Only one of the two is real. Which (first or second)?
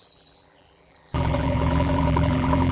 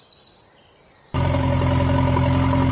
second